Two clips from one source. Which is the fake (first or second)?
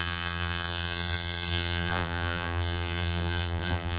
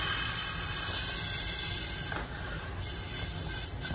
first